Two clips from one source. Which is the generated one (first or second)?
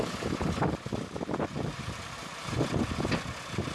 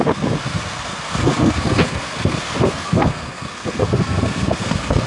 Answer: second